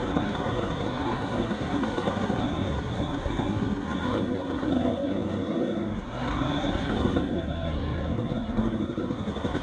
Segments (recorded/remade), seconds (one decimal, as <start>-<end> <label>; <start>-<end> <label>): 0.0-9.6 remade